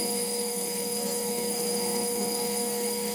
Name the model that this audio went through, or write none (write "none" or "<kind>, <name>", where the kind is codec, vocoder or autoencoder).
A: codec, SNAC